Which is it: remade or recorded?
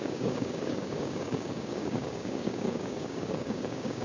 remade